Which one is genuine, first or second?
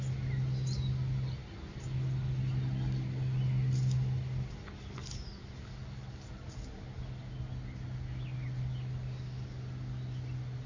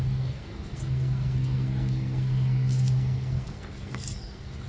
first